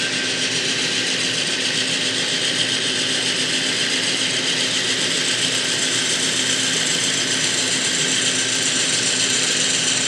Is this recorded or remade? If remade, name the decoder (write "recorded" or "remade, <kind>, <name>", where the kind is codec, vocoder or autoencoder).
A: recorded